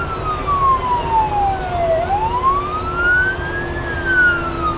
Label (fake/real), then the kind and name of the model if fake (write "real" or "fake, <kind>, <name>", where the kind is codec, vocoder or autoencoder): real